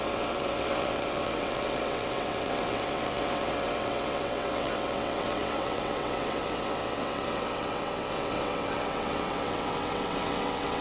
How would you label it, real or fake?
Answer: fake